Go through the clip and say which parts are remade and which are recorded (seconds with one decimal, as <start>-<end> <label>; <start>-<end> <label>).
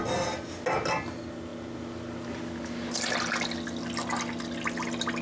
0.0-5.2 recorded